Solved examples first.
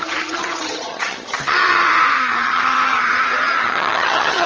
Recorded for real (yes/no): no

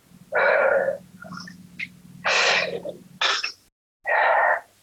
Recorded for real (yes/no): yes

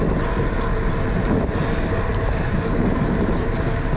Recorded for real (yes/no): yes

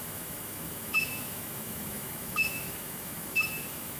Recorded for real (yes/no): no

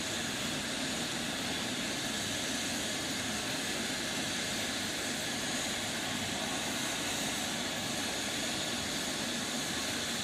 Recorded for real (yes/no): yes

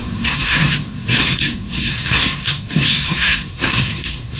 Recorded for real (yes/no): no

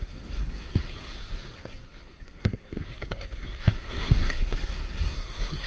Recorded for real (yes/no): no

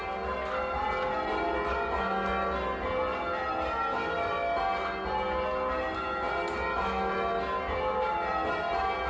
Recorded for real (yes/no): yes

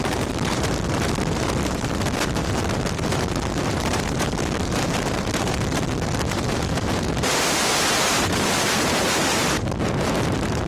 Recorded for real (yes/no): no